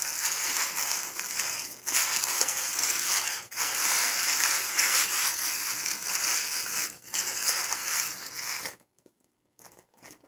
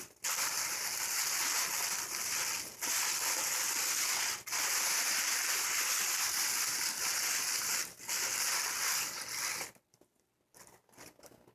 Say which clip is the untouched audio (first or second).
second